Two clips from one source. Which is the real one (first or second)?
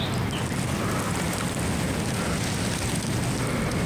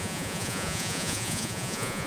first